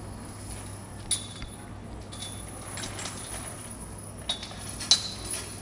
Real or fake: real